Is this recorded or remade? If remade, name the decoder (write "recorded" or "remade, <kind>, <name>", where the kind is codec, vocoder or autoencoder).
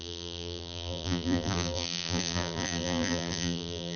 remade, vocoder, BigVGAN v2